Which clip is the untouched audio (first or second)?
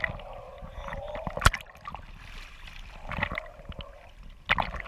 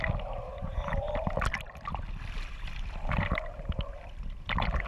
first